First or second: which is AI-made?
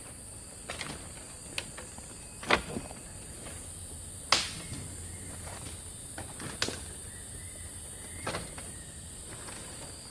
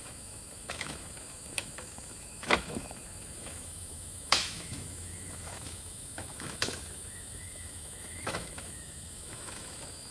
second